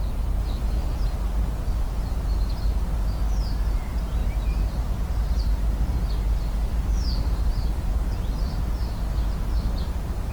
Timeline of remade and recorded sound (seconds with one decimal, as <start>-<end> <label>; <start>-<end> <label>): 0.0-0.8 recorded; 0.8-1.7 remade; 1.7-4.2 recorded; 4.2-4.9 remade; 4.9-6.9 recorded; 6.9-7.9 remade; 7.9-10.3 recorded